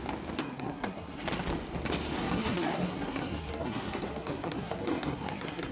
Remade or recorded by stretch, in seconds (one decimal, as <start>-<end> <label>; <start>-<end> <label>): 0.0-0.4 recorded; 0.4-1.2 remade; 1.2-2.2 recorded; 2.2-5.7 remade